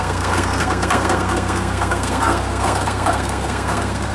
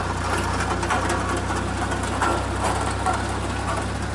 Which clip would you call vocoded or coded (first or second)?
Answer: first